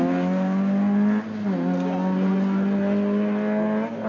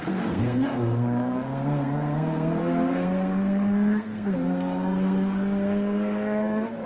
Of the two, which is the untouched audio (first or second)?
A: first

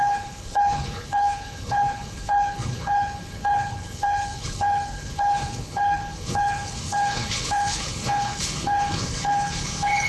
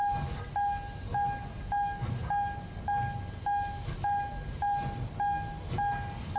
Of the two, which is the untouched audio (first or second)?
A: second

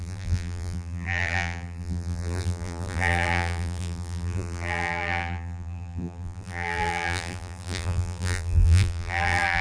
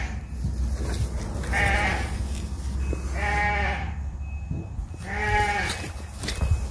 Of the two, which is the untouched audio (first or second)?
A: second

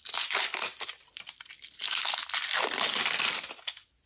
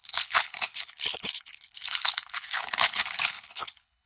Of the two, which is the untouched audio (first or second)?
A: first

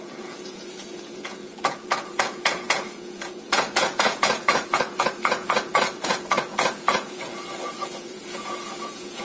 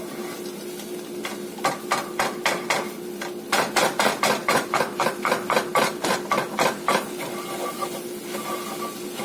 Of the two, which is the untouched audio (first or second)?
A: second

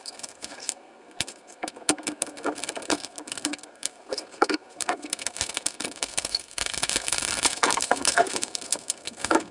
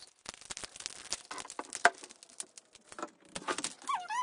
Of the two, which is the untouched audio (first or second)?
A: second